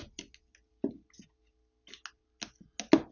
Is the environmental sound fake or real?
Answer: real